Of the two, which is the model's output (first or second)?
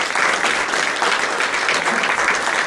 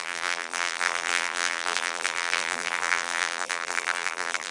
second